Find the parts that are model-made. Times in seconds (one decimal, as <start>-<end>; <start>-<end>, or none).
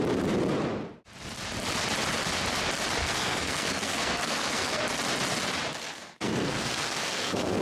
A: 3.0-4.8; 5.8-7.6